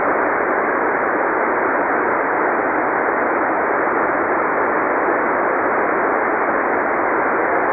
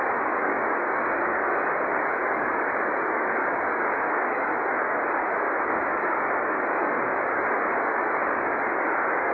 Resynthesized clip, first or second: second